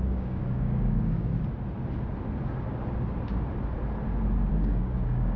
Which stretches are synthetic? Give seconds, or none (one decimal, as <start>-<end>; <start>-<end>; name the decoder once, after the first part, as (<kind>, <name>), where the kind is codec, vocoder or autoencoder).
0.0-1.3 (codec, DAC); 4.5-5.4